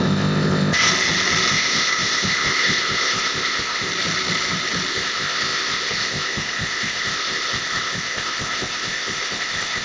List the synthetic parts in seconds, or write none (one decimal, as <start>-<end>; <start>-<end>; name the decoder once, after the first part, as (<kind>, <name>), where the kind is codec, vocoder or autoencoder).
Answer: 0.0-0.9 (codec, ZipCodec); 1.5-3.9; 4.9-9.8